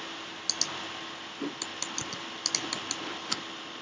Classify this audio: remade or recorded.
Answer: recorded